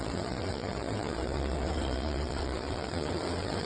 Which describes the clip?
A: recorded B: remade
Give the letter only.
B